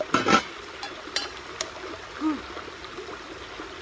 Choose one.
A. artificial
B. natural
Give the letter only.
B